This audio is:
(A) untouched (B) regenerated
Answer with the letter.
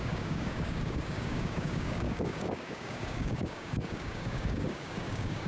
B